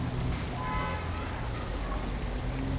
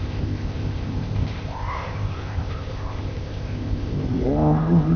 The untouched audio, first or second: first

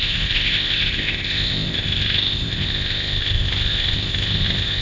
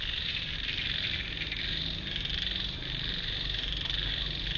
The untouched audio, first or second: second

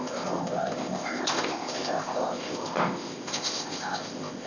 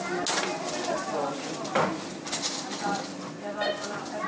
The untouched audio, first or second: second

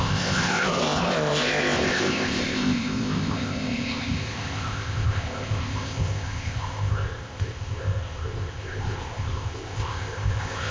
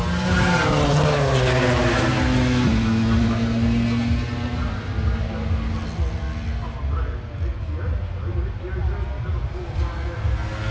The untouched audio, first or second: second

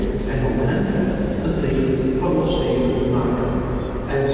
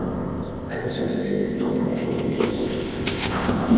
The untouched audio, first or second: first